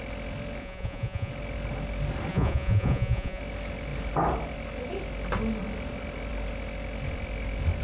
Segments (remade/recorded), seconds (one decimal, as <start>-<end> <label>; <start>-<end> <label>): 0.0-0.6 recorded; 0.6-1.3 remade; 1.3-2.3 recorded; 2.3-3.4 remade; 3.4-7.8 recorded